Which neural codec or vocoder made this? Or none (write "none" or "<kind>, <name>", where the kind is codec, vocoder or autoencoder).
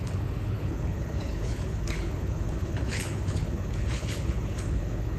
codec, HILCodec